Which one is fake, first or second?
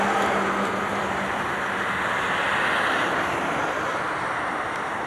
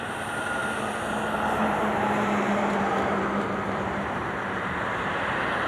second